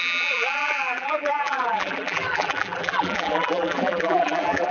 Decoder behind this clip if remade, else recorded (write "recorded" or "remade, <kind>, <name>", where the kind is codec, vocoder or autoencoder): remade, vocoder, BigVGAN v2